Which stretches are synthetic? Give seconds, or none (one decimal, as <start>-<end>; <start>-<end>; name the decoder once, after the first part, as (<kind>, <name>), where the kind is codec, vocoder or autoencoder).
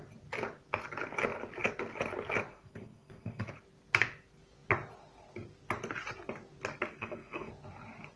2.5-3.5 (codec, SNAC); 6.9-7.5